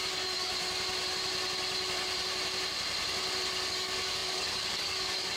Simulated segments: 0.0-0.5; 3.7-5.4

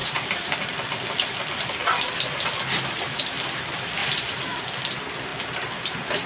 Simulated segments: 0.0-0.5; 4.0-4.5

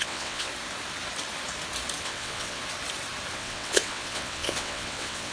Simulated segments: 0.0-0.5; 2.0-2.6; 3.3-5.3

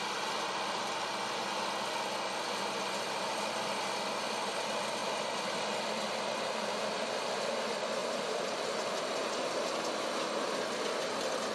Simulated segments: 5.0-7.1; 8.0-8.7

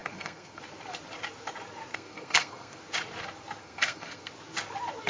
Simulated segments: 0.0-0.6; 1.9-2.8; 3.6-4.3

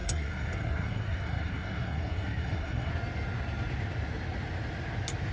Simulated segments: 0.0-2.9

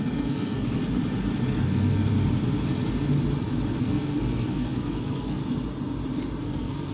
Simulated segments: 0.0-0.8; 1.5-2.1; 3.8-5.4; 6.4-6.9